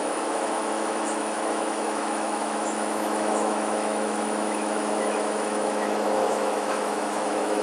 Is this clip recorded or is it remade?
remade